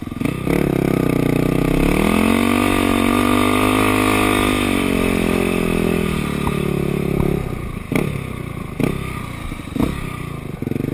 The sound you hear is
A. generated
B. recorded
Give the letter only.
B